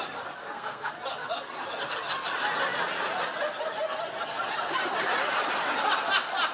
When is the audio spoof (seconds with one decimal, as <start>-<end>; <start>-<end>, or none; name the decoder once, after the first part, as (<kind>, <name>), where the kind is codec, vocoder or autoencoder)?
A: 0.4-0.9 (codec, SNAC)